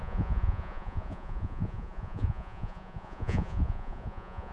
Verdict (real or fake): fake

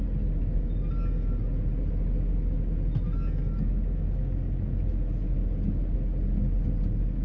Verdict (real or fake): real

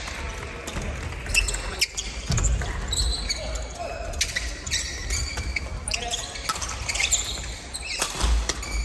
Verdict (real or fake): real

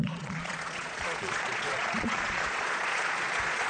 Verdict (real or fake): fake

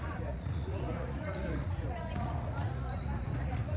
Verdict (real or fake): fake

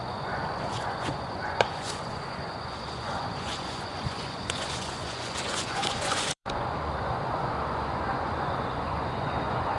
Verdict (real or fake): fake